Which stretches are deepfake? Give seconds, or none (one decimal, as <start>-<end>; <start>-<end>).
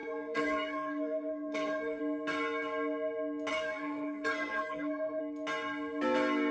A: 0.0-2.0; 3.5-5.2